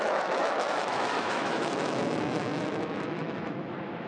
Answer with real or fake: fake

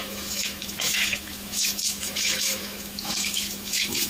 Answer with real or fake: fake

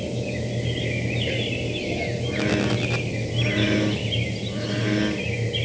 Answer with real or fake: real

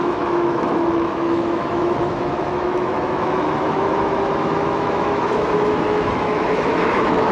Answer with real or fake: fake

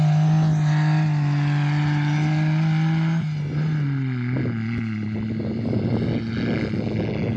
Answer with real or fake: real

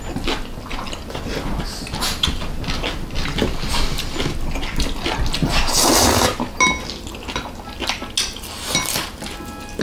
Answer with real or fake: real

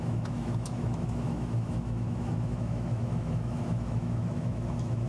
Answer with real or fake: fake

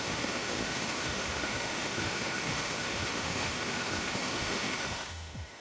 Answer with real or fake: fake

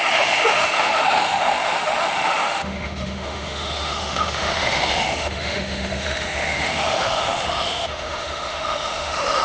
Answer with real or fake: fake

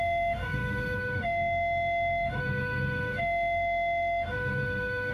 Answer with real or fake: fake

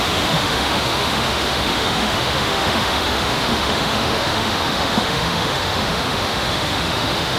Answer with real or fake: fake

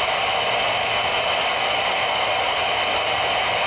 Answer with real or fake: real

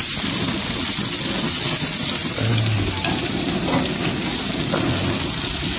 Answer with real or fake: real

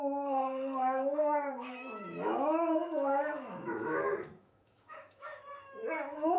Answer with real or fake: fake